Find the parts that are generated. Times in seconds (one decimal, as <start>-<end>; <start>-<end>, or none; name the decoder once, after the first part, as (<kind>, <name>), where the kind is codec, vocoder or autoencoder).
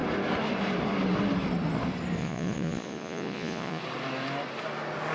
2.2-3.8 (vocoder, Vocos)